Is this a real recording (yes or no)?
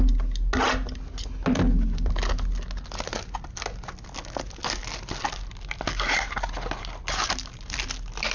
yes